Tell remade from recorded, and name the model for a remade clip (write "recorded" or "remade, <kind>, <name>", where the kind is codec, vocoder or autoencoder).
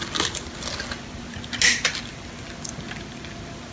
recorded